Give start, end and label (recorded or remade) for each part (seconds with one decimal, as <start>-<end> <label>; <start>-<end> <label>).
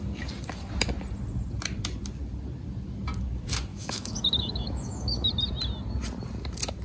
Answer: 0.0-3.7 recorded; 3.7-5.3 remade; 5.3-6.8 recorded